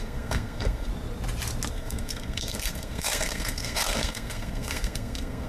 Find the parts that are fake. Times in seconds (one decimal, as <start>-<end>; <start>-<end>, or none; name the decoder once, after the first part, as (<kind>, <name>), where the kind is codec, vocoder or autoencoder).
0.0-0.9 (codec, SNAC); 1.7-5.5